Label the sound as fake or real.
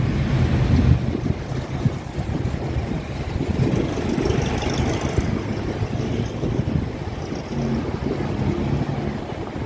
real